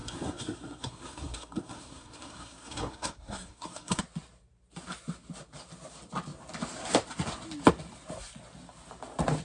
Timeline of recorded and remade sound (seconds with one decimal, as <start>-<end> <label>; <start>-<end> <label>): 0.0-4.0 remade; 4.0-9.4 recorded